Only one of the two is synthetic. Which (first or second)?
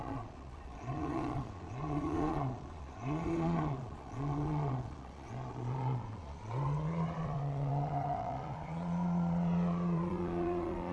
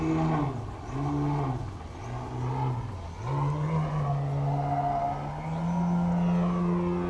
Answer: first